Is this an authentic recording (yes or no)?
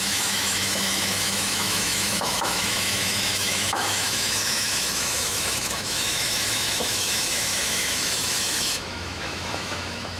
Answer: no